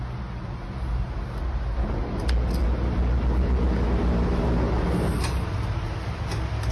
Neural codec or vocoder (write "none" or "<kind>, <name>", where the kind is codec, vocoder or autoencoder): none